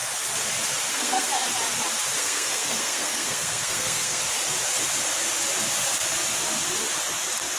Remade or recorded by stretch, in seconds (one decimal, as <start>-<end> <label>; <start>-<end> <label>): 0.0-0.9 recorded; 0.9-1.3 remade; 1.3-2.2 recorded; 2.2-4.2 remade; 4.2-7.6 recorded